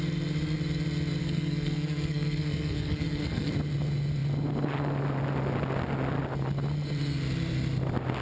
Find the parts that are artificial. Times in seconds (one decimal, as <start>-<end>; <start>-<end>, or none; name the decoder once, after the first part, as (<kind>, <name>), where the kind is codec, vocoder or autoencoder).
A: 1.2-3.5 (codec, SNAC)